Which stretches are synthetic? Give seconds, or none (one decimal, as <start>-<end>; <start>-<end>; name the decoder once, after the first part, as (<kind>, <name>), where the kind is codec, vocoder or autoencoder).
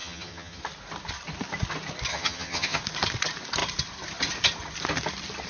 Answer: 0.0-0.6 (vocoder, HiFi-GAN); 2.1-2.8